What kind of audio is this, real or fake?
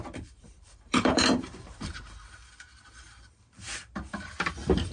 fake